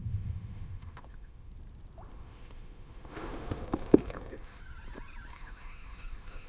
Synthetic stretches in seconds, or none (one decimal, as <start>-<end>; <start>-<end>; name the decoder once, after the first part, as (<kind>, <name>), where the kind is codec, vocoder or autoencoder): 0.0-1.5 (autoencoder, DAC-VAE); 2.1-4.6; 5.3-6.5